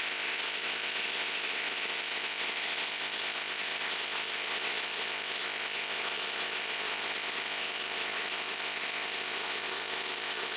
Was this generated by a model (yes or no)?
yes